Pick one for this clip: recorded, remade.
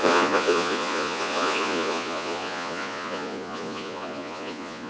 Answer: remade